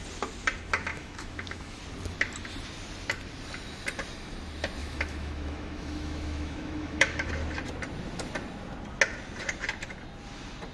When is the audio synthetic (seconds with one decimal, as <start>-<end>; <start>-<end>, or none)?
0.9-1.8; 4.8-7.3